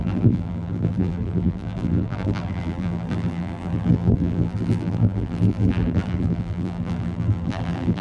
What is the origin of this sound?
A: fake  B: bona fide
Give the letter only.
A